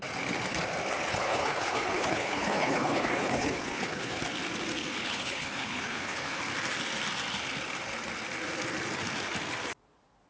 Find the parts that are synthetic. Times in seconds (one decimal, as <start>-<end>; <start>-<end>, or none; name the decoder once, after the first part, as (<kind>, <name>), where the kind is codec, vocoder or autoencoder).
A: 1.1-4.2 (codec, HILCodec); 5.0-6.4